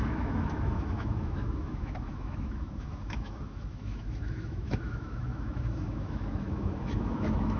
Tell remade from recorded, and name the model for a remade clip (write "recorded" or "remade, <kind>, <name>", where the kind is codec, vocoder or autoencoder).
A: remade, autoencoder, DAC-VAE